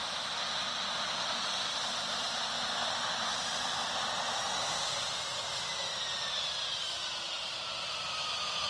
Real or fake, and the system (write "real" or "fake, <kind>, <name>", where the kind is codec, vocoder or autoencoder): real